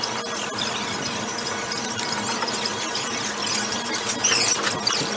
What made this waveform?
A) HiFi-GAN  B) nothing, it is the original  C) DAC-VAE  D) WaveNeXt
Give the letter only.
B